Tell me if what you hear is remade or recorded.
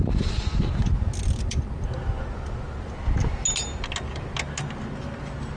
recorded